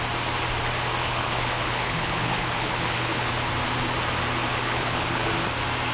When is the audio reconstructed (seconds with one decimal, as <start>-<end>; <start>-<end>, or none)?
1.0-3.3; 4.5-5.3